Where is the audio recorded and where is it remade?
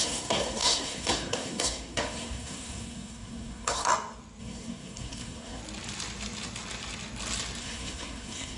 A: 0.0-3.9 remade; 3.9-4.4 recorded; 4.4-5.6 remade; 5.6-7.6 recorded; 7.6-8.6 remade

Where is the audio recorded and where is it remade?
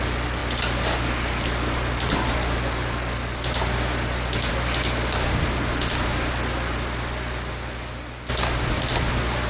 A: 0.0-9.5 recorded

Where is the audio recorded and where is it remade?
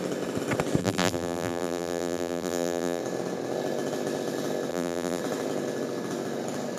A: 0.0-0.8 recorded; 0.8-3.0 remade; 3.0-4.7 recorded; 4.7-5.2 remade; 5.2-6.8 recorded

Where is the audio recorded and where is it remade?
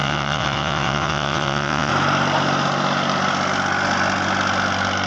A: 0.0-1.9 remade; 1.9-5.1 recorded